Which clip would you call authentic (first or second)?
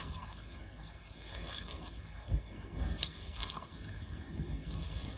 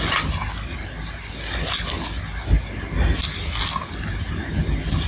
second